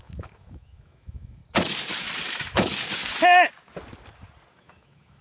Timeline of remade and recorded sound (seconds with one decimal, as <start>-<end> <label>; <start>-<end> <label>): 0.0-1.4 remade; 1.4-2.3 recorded; 2.3-2.7 remade; 2.7-4.5 recorded; 4.5-5.2 remade